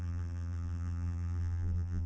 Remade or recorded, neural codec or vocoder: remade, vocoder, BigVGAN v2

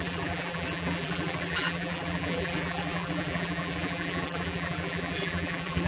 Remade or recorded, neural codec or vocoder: remade, vocoder, BigVGAN v2